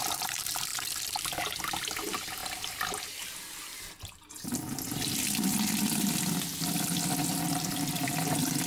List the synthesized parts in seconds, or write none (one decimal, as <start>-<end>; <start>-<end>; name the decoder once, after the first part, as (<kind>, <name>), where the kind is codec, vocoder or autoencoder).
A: 0.0-0.7 (vocoder, BigVGAN v2); 1.6-2.4; 7.4-8.7